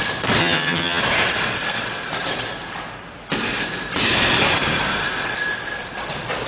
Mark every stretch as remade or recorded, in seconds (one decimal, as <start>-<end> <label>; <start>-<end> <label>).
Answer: 0.0-0.4 recorded; 0.4-1.0 remade; 1.0-6.5 recorded